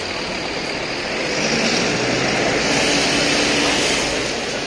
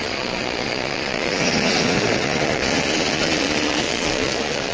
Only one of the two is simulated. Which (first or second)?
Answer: second